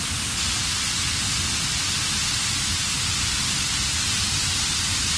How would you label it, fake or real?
real